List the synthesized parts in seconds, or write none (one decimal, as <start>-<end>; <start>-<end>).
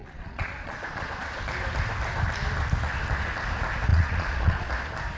0.0-1.4; 3.9-4.7